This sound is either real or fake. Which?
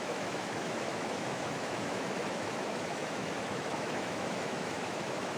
fake